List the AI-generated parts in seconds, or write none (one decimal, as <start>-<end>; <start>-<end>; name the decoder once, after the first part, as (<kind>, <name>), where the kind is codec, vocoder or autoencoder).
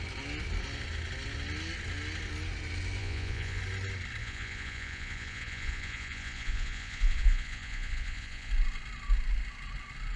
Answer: 3.0-3.6 (vocoder, Vocos); 4.2-8.5